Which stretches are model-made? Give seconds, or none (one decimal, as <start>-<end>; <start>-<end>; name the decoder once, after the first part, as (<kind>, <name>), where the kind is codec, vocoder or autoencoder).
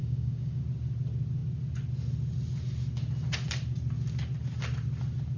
0.0-0.6 (codec, DAC)